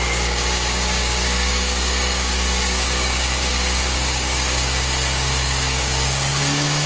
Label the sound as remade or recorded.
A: remade